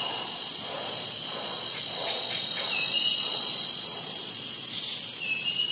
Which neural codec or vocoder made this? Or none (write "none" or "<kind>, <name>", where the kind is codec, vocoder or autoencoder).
vocoder, Vocos